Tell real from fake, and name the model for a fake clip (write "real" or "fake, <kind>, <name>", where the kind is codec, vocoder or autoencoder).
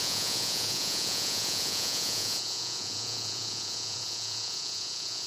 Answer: fake, vocoder, Vocos